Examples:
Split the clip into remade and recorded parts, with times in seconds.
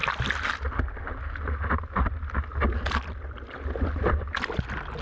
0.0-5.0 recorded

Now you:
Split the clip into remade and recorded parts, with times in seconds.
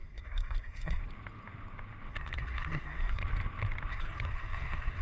0.0-1.0 remade; 1.0-2.1 recorded; 2.1-3.2 remade; 3.2-3.9 recorded; 3.9-5.0 remade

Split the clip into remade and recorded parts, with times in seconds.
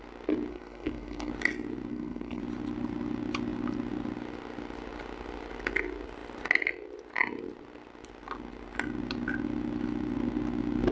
0.0-0.5 recorded; 0.5-1.3 remade; 1.3-1.9 recorded; 1.9-2.4 remade; 2.4-10.9 recorded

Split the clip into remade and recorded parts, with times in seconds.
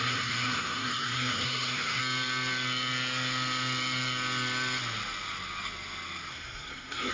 0.0-2.0 remade; 2.0-6.3 recorded; 6.3-7.1 remade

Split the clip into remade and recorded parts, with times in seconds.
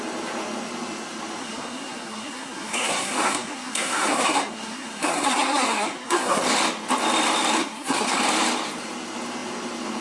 0.0-1.4 recorded; 1.4-6.4 remade; 6.4-7.6 recorded; 7.6-8.2 remade; 8.2-10.0 recorded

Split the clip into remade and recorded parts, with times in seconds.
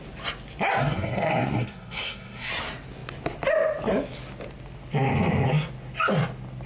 0.0-0.8 recorded; 0.8-2.5 remade; 2.5-6.7 recorded